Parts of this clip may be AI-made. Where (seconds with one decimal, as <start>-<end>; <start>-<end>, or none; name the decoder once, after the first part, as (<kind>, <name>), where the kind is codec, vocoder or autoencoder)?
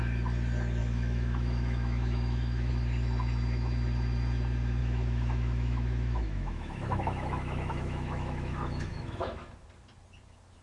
0.8-2.7 (autoencoder, DAC-VAE); 4.8-9.5